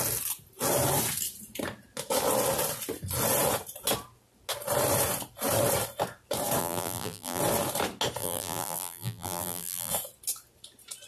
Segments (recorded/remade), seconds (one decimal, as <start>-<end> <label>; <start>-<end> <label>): 0.0-6.6 recorded; 6.6-7.4 remade; 7.4-8.2 recorded; 8.2-9.9 remade; 9.9-11.1 recorded